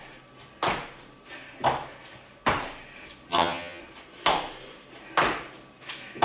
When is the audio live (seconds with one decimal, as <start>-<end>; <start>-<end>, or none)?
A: 0.0-3.3; 3.8-6.2